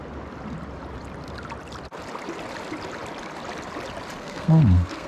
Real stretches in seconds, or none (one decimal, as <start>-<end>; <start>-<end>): 0.0-4.2